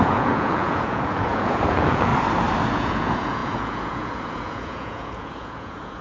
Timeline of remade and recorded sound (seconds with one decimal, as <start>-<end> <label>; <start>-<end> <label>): 0.0-2.1 remade; 2.1-2.7 recorded; 2.7-6.0 remade